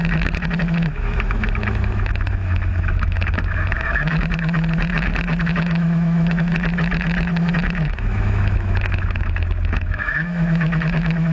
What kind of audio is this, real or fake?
fake